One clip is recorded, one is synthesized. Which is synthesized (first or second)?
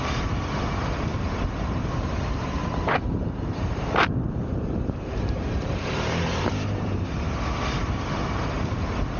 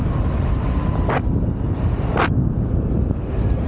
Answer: first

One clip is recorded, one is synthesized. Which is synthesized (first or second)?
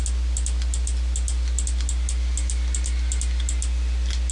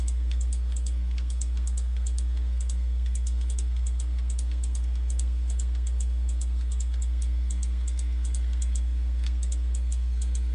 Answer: second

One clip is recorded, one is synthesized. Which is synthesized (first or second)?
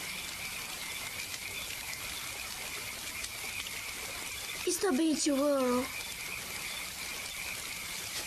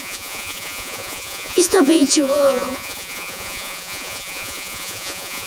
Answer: second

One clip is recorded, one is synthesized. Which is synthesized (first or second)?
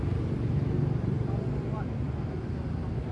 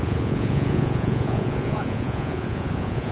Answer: second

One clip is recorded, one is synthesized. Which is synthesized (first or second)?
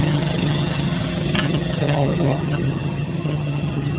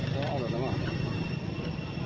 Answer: first